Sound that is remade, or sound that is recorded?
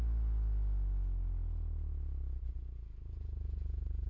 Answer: recorded